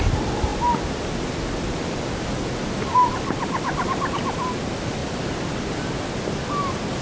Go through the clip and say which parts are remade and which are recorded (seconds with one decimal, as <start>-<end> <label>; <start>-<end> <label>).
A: 0.0-2.6 recorded; 2.6-4.5 remade; 4.5-5.0 recorded; 5.0-5.6 remade; 5.6-7.0 recorded